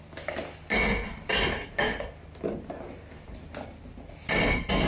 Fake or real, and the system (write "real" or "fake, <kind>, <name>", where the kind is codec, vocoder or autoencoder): real